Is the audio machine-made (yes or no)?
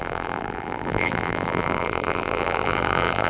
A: yes